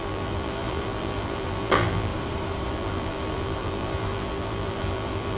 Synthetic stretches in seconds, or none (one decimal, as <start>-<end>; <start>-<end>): 0.0-2.1; 2.7-5.4